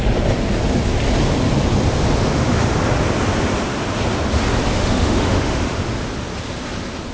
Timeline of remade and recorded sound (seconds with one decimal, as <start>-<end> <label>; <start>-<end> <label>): 0.0-2.3 recorded; 2.3-2.8 remade; 2.8-4.7 recorded; 4.7-5.8 remade; 5.8-7.1 recorded